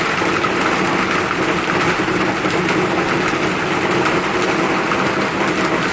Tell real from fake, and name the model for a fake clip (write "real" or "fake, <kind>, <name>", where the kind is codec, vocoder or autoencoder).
real